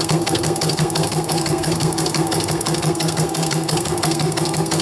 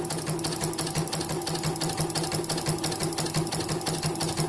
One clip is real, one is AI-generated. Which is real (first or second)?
second